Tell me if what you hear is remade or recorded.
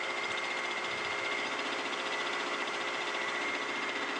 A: recorded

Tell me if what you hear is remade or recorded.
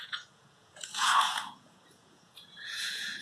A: remade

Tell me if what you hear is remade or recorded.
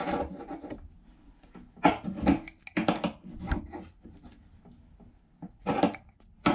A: recorded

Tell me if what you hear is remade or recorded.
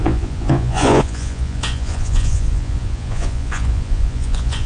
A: remade